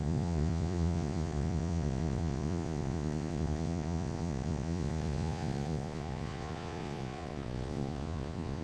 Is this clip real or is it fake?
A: fake